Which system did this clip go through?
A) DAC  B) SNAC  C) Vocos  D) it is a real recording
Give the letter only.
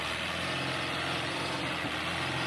D